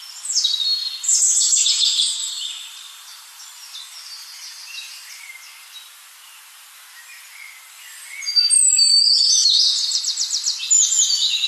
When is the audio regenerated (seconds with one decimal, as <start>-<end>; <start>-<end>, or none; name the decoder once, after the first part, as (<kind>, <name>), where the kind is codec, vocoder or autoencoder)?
1.1-5.3 (vocoder, BigVGAN v2); 8.8-10.0